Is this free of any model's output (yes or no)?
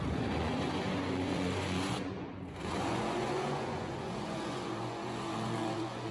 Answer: no